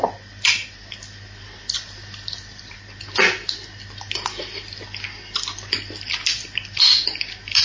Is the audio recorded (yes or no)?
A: yes